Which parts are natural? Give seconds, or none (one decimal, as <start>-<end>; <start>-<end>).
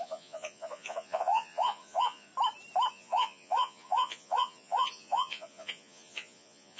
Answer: 2.3-2.9